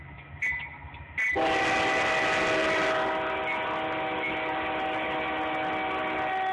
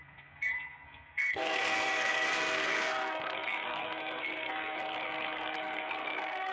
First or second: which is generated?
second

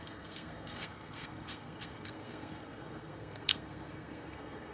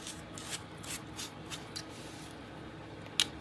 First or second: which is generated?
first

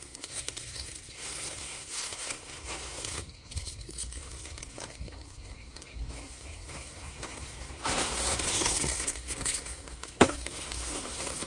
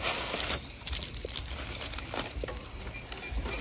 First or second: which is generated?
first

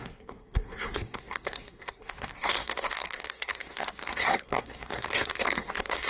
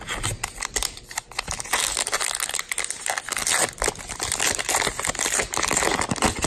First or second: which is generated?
first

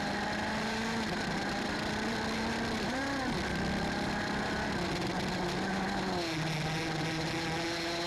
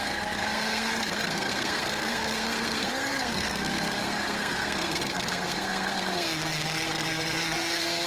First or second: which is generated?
second